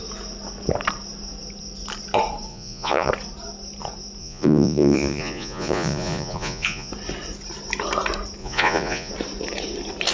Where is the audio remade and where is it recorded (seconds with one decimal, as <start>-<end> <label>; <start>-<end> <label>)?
0.0-2.5 recorded; 2.5-3.1 remade; 3.1-4.2 recorded; 4.2-6.9 remade; 6.9-8.4 recorded; 8.4-9.1 remade; 9.1-10.1 recorded